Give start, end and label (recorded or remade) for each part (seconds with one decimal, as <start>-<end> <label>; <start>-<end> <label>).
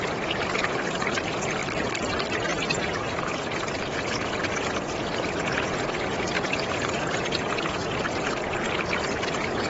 0.0-1.6 remade; 1.6-2.3 recorded; 2.3-9.7 remade